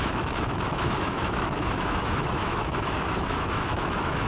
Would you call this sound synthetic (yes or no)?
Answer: yes